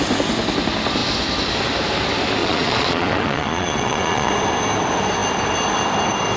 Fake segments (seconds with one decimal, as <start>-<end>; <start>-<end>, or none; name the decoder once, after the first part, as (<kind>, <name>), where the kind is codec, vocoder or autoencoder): 2.4-4.3 (vocoder, Vocos)